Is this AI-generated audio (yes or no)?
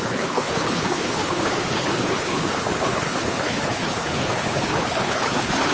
yes